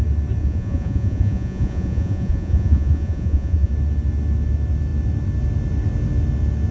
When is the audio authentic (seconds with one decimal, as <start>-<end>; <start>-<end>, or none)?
0.0-0.4; 3.7-6.7